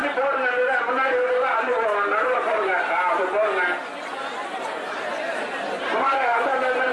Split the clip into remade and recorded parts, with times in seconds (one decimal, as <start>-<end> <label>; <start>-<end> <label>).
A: 0.0-3.2 remade; 3.2-4.5 recorded; 4.5-5.1 remade; 5.1-5.8 recorded; 5.8-6.9 remade